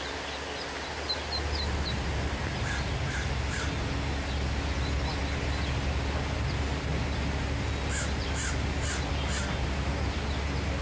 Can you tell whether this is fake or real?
real